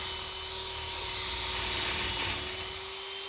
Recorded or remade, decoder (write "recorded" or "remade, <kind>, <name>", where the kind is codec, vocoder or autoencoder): recorded